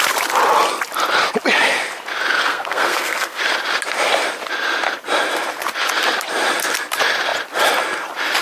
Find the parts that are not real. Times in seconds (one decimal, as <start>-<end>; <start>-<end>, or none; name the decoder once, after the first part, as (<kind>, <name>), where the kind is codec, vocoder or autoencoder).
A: 2.4-3.4 (codec, SNAC)